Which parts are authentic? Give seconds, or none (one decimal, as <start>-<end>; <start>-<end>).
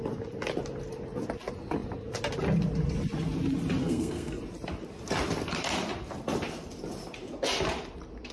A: 0.0-3.8; 4.4-8.3